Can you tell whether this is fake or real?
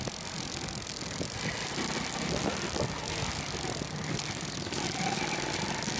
real